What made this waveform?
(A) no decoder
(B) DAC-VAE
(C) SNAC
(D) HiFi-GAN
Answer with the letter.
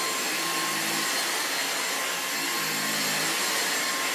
A